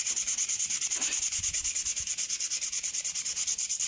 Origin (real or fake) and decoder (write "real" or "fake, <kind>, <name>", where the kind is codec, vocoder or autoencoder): real